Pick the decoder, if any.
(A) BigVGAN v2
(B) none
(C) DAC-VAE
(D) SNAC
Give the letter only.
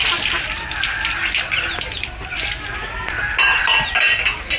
B